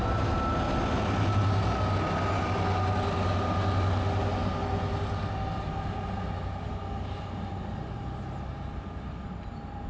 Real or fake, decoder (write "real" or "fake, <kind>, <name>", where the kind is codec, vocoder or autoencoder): real